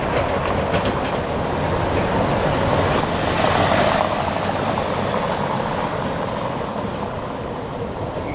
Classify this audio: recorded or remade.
recorded